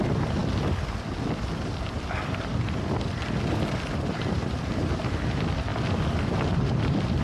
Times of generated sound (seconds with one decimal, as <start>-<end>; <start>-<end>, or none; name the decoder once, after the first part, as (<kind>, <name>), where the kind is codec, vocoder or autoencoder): 0.0-0.4 (vocoder, BigVGAN v2); 1.4-7.2